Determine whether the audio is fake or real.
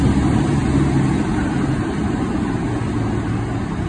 real